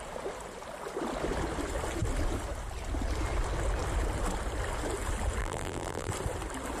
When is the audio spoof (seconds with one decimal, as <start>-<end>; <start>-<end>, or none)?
5.4-6.1